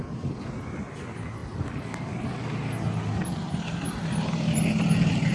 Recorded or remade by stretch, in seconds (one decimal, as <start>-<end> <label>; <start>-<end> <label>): 0.0-5.3 recorded